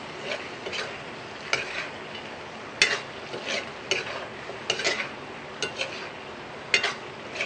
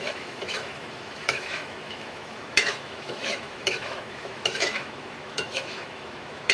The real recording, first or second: first